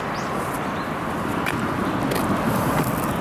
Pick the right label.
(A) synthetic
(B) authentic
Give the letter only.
B